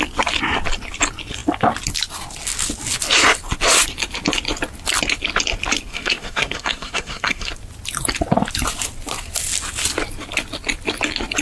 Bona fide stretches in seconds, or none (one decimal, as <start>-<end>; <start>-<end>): 0.0-5.9; 7.5-11.4